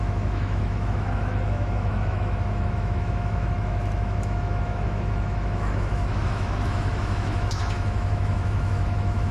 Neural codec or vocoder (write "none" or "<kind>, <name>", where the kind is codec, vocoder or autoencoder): autoencoder, DAC-VAE